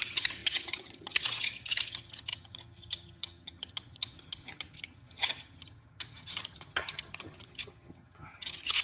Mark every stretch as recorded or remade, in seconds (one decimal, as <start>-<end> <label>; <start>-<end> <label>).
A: 0.0-8.8 remade